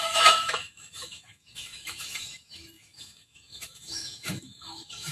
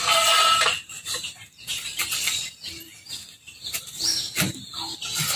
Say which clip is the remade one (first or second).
first